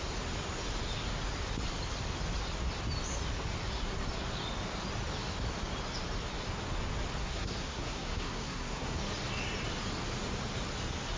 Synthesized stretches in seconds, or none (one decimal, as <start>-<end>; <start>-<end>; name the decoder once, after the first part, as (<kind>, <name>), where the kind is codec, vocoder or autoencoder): 7.2-9.0 (codec, SNAC)